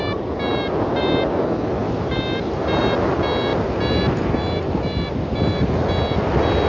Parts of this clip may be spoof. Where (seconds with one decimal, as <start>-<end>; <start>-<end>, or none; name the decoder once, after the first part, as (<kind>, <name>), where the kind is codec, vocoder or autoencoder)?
1.8-2.8 (vocoder, BigVGAN v2)